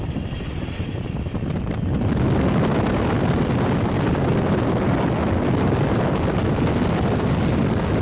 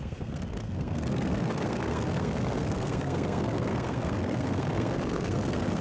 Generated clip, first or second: second